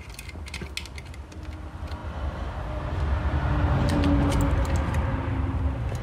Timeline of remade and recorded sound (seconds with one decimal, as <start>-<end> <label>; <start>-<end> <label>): 0.0-6.0 recorded